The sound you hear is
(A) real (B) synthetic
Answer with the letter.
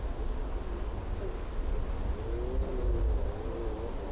A